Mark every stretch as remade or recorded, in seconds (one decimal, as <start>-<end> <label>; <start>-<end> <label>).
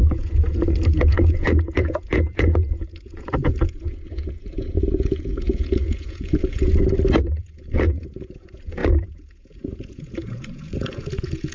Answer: 0.0-6.7 remade; 6.7-7.4 recorded; 7.4-11.5 remade